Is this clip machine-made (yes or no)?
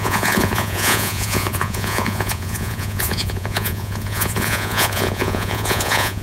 yes